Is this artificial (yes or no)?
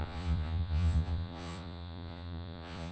yes